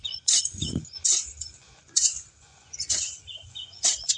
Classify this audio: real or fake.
fake